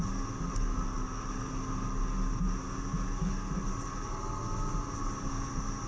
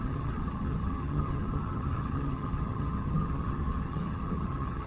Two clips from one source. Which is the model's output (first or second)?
second